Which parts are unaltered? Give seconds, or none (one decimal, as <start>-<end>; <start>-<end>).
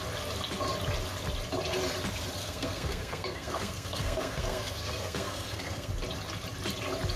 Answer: 0.0-2.4; 5.9-7.2